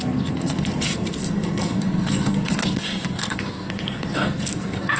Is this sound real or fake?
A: fake